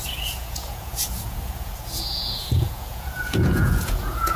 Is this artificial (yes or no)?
yes